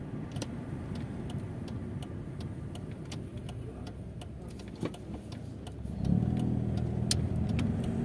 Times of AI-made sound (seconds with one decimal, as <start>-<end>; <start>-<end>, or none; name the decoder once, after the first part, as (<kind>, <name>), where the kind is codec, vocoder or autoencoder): none

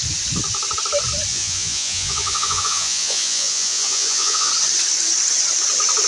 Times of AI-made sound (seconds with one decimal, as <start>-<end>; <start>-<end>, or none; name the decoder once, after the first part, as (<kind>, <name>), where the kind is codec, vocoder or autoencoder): 1.3-4.5 (vocoder, Vocos)